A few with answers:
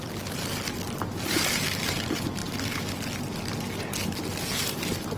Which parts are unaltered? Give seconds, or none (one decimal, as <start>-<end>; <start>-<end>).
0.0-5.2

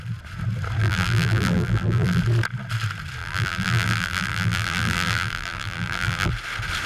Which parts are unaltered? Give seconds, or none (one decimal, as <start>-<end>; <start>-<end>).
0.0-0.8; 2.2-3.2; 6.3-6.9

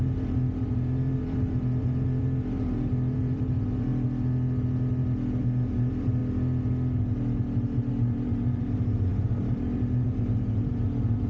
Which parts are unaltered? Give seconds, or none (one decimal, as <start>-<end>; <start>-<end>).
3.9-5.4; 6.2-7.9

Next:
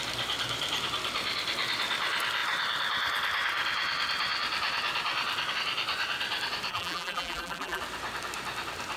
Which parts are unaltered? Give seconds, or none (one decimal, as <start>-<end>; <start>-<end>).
0.0-6.7; 7.8-9.0